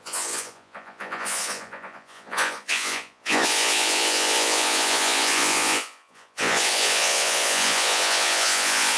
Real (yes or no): no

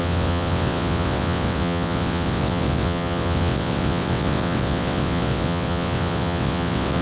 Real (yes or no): no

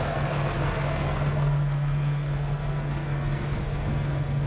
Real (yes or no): no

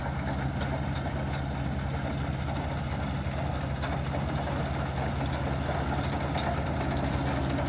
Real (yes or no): yes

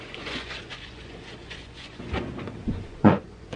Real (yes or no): no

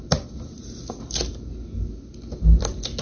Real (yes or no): yes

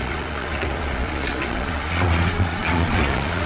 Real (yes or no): no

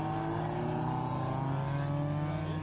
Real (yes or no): yes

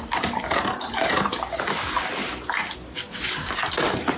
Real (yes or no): yes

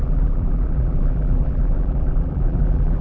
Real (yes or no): no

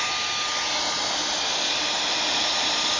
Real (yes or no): yes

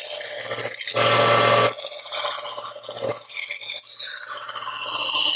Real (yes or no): yes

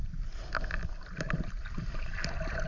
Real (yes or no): yes